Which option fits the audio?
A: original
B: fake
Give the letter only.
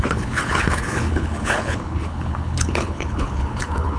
B